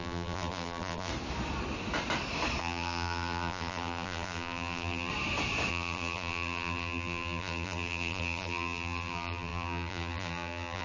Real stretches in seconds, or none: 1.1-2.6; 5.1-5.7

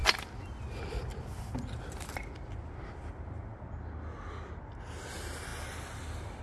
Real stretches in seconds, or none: 0.0-6.4

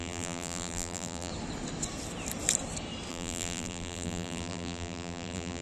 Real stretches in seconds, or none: 1.3-3.1

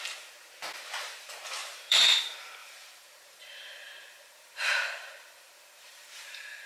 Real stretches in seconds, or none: 0.0-1.6; 2.2-2.6

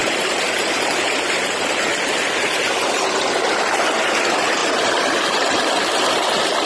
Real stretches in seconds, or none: 3.4-6.7

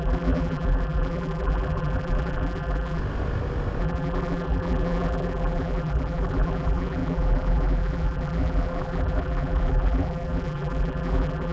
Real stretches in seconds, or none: 3.0-3.8

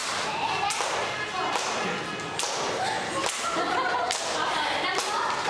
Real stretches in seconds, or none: 0.0-5.5